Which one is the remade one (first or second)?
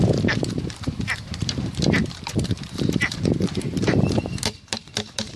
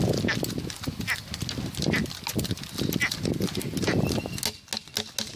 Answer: first